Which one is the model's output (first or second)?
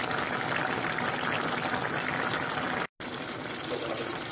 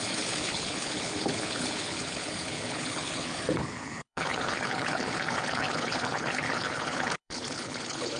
second